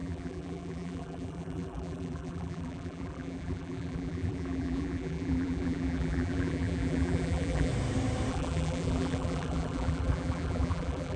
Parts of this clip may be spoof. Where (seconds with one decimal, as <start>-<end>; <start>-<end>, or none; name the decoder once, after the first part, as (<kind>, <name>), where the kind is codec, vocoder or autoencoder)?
0.0-7.7 (vocoder, BigVGAN v2); 8.3-11.2